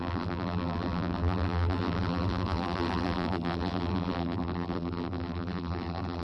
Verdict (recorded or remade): remade